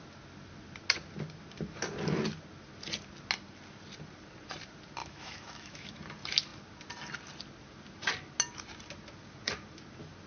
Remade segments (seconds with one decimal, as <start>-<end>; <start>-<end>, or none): 5.0-6.0